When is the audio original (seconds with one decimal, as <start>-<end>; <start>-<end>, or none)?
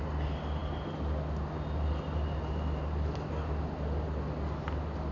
0.0-5.1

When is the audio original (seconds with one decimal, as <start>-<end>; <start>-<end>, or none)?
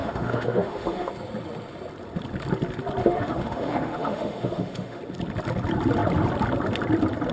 1.1-3.0; 5.0-7.3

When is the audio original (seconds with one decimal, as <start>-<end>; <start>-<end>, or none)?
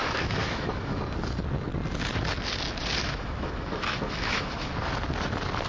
1.0-3.0; 4.7-5.7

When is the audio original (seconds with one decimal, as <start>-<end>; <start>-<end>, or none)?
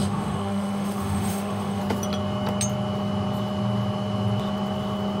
1.8-5.2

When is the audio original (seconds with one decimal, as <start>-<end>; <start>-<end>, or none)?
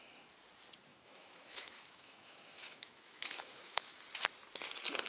0.0-0.9; 4.0-5.1